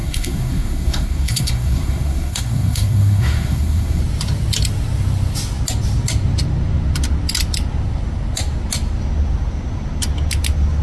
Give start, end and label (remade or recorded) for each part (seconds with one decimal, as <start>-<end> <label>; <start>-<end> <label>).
0.0-4.0 remade; 4.0-10.8 recorded